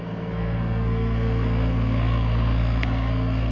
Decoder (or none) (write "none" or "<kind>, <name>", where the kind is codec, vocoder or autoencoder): codec, SNAC